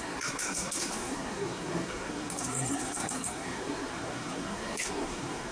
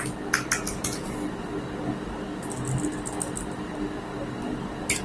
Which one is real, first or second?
second